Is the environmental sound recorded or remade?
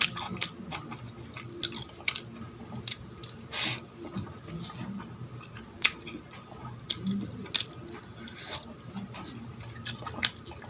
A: recorded